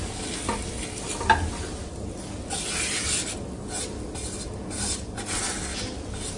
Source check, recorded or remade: recorded